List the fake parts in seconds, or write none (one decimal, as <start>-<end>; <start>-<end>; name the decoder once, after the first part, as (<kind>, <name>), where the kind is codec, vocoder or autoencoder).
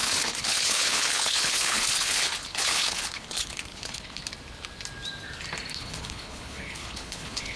0.0-4.2 (codec, HILCodec); 5.7-7.6